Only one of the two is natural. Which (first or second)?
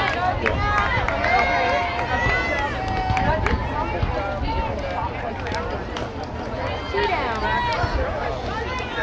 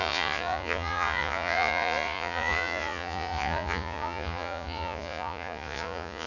first